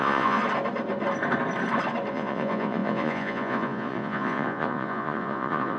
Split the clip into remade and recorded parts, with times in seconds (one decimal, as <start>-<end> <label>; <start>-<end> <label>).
0.0-0.4 remade; 0.4-2.1 recorded; 2.1-5.8 remade